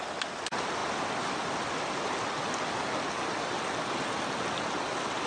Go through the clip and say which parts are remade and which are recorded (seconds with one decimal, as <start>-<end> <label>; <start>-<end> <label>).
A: 0.0-5.3 recorded